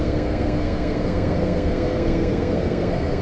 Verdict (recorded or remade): remade